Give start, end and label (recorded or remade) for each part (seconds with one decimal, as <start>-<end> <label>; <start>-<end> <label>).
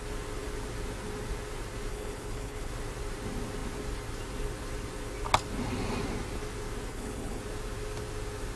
0.0-1.9 recorded; 1.9-2.7 remade; 2.7-6.9 recorded; 6.9-7.4 remade; 7.4-8.6 recorded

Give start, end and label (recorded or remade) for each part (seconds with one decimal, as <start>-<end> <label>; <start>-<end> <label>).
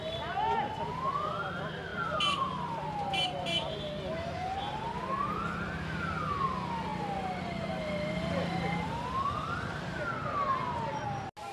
0.0-1.9 recorded; 1.9-3.2 remade; 3.2-11.5 recorded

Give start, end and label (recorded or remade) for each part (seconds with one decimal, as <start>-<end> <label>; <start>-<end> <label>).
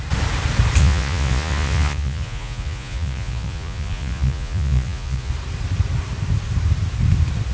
0.0-0.8 recorded; 0.8-5.3 remade; 5.3-7.5 recorded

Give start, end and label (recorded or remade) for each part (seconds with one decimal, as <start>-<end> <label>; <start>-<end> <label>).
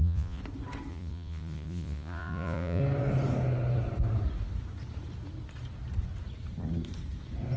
0.0-0.4 remade; 0.4-0.9 recorded; 0.9-2.8 remade; 2.8-7.6 recorded